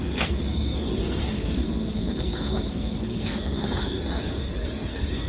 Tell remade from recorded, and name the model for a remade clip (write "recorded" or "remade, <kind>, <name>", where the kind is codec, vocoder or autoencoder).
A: remade, codec, SNAC